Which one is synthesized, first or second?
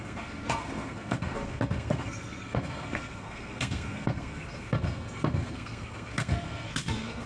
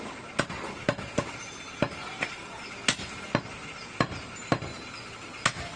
first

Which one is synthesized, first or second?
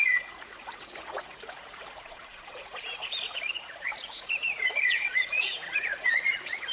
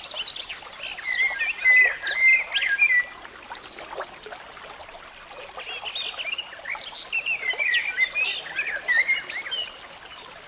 first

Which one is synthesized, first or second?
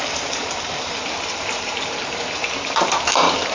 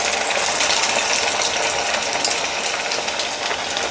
first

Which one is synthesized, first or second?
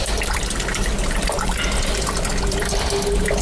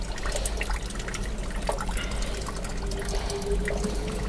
first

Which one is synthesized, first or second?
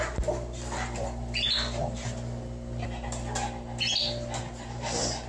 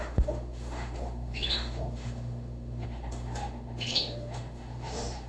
second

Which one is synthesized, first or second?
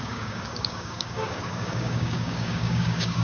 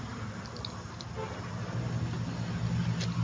first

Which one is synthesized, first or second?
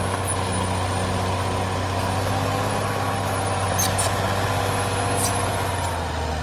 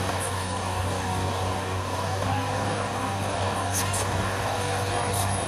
second